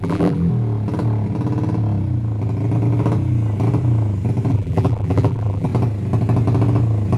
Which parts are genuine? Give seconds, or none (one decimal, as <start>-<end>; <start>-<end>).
0.5-4.5; 5.7-7.2